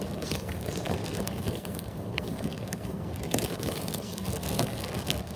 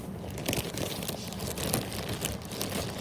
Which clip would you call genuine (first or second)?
second